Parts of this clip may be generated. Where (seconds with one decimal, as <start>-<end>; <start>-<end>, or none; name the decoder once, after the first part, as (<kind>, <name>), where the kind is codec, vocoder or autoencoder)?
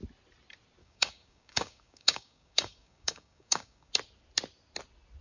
0.8-3.9 (codec, DAC)